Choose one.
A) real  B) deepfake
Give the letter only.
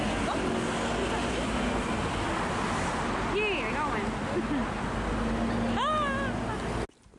A